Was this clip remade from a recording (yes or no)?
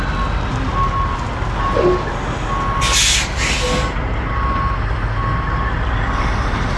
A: no